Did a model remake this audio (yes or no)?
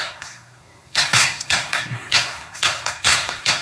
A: yes